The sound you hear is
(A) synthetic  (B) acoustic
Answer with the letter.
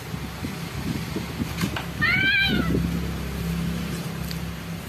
B